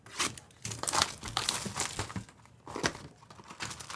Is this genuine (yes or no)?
yes